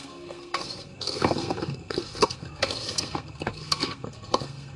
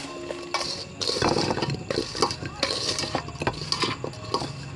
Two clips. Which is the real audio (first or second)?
second